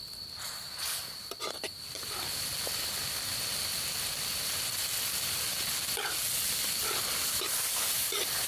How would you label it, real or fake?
real